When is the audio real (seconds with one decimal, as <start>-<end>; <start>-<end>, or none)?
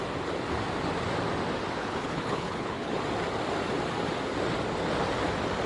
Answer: 0.0-1.8; 3.0-5.7